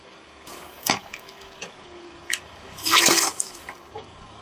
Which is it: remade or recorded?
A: remade